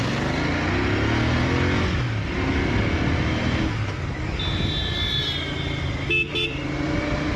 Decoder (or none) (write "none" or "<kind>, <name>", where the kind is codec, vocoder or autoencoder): none